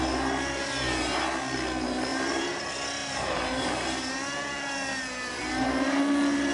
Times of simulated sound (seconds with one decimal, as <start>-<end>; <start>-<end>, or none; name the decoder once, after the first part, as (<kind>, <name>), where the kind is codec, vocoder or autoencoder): 2.1-2.6 (vocoder, BigVGAN v2); 3.0-4.1; 4.9-5.4